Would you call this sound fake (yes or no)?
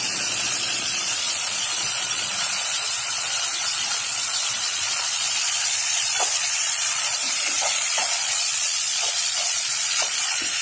yes